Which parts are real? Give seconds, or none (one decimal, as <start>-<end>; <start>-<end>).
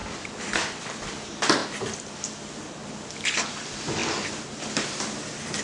0.6-4.0; 5.0-5.6